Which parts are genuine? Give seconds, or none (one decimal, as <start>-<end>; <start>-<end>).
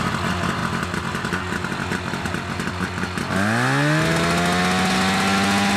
0.0-5.8